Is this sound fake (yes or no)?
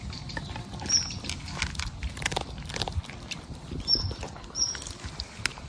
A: no